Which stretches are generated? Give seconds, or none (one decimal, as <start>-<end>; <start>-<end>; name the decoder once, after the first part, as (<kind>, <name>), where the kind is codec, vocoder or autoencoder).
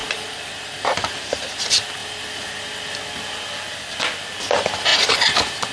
0.0-1.6 (vocoder, BigVGAN v2); 4.9-5.7